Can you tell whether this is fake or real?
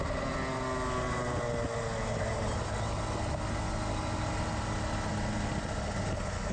real